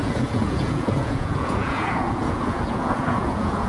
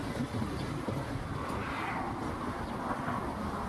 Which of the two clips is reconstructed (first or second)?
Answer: first